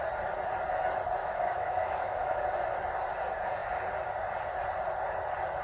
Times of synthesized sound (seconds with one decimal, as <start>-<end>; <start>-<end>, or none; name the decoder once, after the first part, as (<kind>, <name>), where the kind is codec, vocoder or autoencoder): 1.2-2.4 (autoencoder, DAC-VAE)